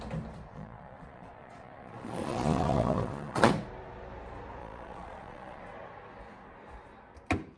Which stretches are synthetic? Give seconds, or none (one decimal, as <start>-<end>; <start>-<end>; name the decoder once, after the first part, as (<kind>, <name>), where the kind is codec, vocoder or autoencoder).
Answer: 0.5-3.5 (vocoder, Vocos); 4.6-5.6